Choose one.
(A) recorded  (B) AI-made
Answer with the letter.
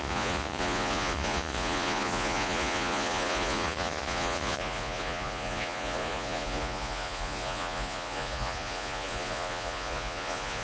B